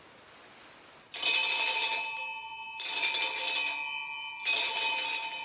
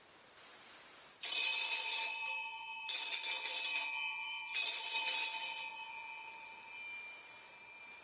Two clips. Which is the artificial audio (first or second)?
second